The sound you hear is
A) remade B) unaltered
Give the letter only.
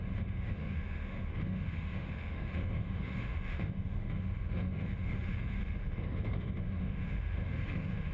A